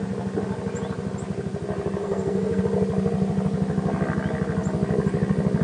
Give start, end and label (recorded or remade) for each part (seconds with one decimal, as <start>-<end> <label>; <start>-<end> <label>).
0.0-2.0 recorded; 2.0-2.6 remade; 2.6-5.6 recorded